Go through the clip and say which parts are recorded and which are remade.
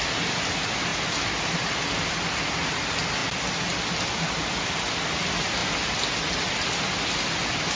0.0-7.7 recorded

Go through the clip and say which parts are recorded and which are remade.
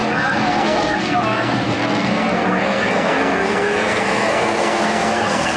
0.0-5.6 remade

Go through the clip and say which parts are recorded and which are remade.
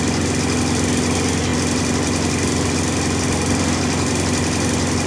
0.0-5.1 recorded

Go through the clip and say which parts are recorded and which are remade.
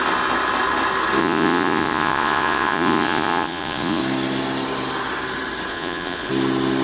0.0-1.2 recorded; 1.2-4.0 remade; 4.0-5.7 recorded; 5.7-6.3 remade; 6.3-6.8 recorded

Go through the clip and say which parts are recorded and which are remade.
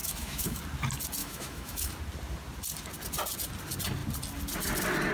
0.0-0.6 remade; 0.6-1.2 recorded; 1.2-1.9 remade; 1.9-5.1 recorded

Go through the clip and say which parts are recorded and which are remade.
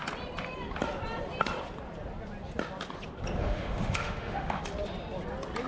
0.0-3.4 recorded; 3.4-4.6 remade; 4.6-5.7 recorded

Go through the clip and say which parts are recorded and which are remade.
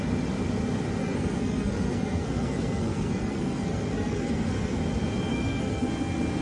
0.0-1.0 recorded; 1.0-4.8 remade; 4.8-5.3 recorded; 5.3-5.9 remade; 5.9-6.4 recorded